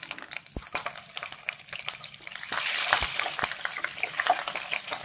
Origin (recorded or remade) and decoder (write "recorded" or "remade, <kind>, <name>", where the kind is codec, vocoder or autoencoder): recorded